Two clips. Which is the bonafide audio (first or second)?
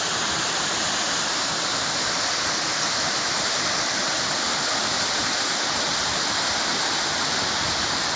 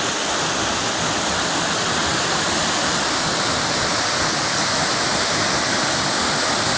second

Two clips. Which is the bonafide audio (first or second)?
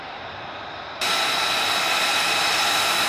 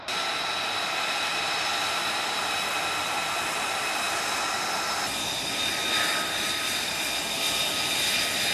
second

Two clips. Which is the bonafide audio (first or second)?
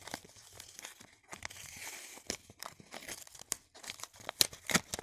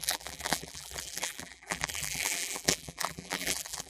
first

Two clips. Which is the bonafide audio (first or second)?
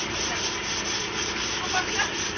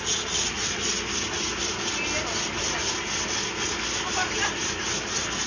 second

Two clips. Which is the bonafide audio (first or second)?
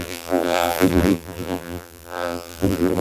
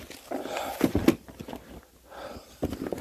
second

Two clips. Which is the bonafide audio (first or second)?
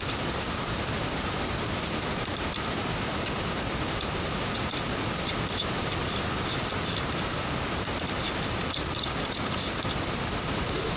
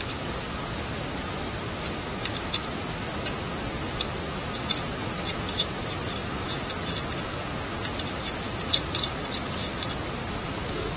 second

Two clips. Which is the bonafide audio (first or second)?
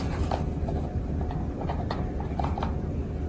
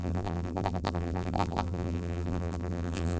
first